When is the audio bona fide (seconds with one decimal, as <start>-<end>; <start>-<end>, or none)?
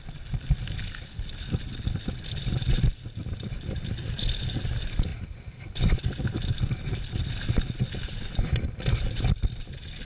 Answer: 0.0-10.0